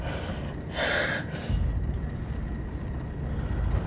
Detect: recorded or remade recorded